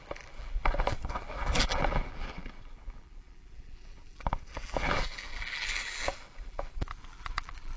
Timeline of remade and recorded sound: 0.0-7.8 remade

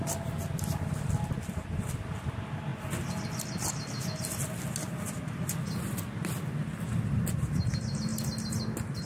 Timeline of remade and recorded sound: 0.0-9.0 recorded

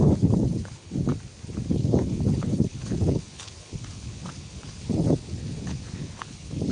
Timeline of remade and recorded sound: 0.0-1.1 remade; 1.1-1.7 recorded; 1.7-6.7 remade

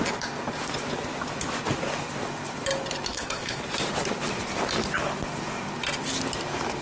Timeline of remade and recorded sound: 0.0-3.1 recorded; 3.1-3.6 remade; 3.6-6.8 recorded

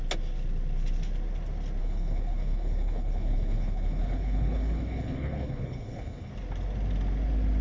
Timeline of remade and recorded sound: 0.0-1.8 recorded; 1.8-6.3 remade; 6.3-7.6 recorded

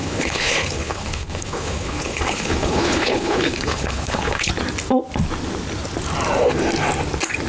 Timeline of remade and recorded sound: 0.0-4.5 remade; 4.5-7.5 recorded

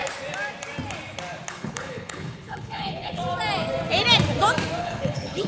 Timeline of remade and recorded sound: 0.0-1.5 recorded; 1.5-3.2 remade; 3.2-4.8 recorded; 4.8-5.5 remade

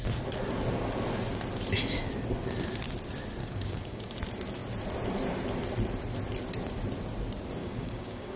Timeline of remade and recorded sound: 0.0-3.4 recorded; 3.4-4.1 remade; 4.1-7.6 recorded; 7.6-8.4 remade